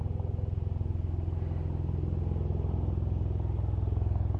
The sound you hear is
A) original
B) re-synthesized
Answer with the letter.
A